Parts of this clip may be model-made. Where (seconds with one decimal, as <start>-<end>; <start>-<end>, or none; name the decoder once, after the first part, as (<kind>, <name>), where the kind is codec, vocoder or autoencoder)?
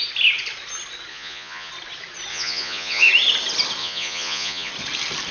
1.1-1.7 (vocoder, Vocos); 2.3-3.1; 3.8-4.7